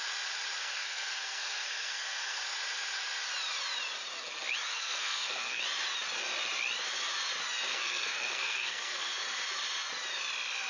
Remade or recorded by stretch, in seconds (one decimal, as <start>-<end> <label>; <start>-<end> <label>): 0.0-0.6 recorded; 0.6-2.4 remade; 2.4-4.7 recorded; 4.7-5.6 remade; 5.6-7.7 recorded; 7.7-9.1 remade; 9.1-10.7 recorded